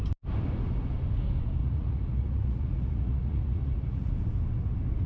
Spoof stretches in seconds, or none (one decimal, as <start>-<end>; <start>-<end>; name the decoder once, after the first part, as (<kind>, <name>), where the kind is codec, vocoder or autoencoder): 1.6-4.1 (vocoder, Vocos)